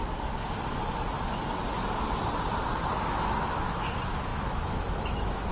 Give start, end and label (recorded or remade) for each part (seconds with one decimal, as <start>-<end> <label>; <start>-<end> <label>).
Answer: 0.0-3.0 recorded; 3.0-5.5 remade